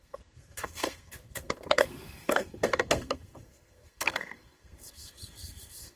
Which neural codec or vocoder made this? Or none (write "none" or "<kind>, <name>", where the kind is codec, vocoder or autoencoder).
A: codec, SNAC